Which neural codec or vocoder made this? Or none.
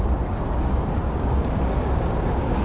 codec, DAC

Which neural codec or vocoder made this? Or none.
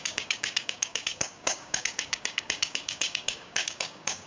codec, DAC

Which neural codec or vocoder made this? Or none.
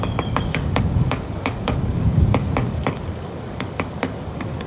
codec, DAC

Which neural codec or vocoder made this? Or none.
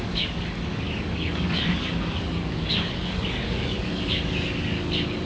codec, DAC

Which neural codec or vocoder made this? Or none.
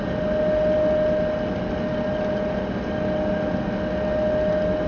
none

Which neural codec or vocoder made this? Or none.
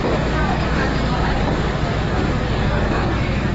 codec, DAC